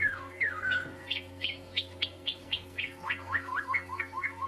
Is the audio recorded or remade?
remade